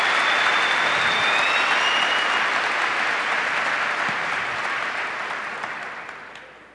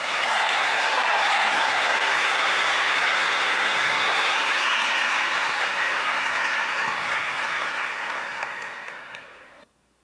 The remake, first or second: second